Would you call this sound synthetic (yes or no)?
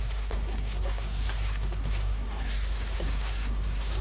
yes